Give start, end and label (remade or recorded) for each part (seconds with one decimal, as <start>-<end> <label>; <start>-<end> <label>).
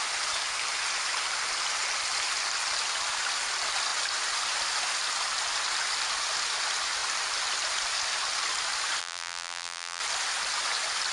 0.0-9.0 recorded; 9.0-10.0 remade; 10.0-11.1 recorded